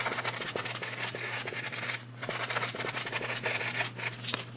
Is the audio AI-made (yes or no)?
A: no